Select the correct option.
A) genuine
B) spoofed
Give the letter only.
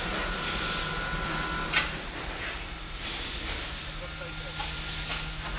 A